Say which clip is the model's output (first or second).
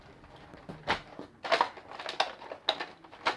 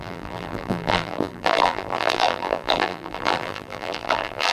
second